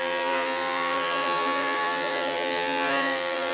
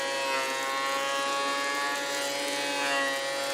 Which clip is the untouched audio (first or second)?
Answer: second